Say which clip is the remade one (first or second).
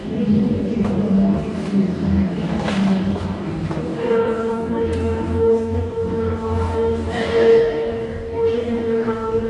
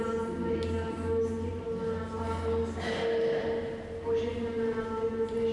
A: first